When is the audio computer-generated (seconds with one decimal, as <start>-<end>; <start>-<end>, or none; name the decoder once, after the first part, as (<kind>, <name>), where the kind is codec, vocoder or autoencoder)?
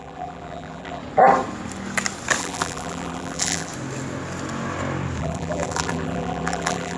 0.0-1.0 (vocoder, BigVGAN v2); 2.4-3.7; 5.2-7.0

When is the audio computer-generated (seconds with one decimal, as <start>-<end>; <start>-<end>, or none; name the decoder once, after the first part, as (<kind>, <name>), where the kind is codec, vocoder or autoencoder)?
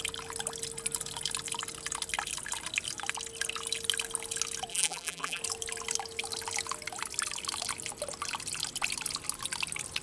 4.7-5.4 (vocoder, BigVGAN v2)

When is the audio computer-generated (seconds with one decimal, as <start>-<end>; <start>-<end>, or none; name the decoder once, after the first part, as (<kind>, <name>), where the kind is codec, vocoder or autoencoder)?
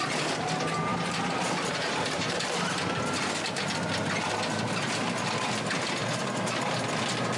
0.9-3.3 (vocoder, BigVGAN v2); 6.0-6.8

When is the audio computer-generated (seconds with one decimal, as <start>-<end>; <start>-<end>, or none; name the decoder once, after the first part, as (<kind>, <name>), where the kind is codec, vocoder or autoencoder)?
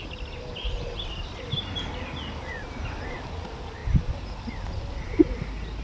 3.8-4.8 (vocoder, BigVGAN v2)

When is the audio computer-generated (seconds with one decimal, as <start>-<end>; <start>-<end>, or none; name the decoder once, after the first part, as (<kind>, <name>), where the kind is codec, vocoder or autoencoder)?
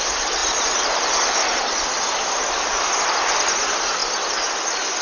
0.0-4.0 (vocoder, BigVGAN v2)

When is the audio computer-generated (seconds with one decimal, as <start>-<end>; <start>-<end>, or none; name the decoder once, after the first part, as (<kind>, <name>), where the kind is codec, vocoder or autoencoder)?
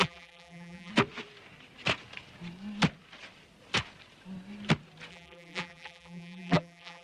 0.0-0.9 (vocoder, BigVGAN v2); 5.1-7.0